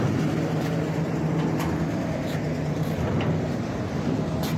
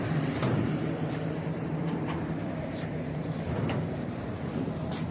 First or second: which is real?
first